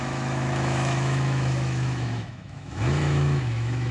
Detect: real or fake fake